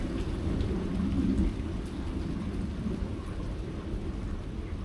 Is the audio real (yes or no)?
yes